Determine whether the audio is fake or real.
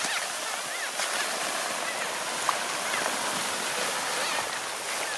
real